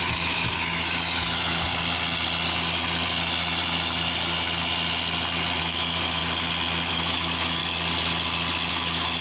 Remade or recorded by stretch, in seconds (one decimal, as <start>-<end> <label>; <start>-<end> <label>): 0.0-1.7 remade; 1.7-5.6 recorded; 5.6-6.2 remade; 6.2-6.9 recorded; 6.9-7.6 remade; 7.6-8.7 recorded; 8.7-9.2 remade